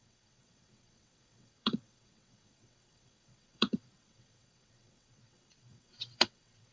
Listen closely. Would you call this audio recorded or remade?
remade